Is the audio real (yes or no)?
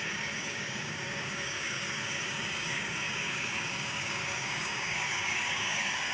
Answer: no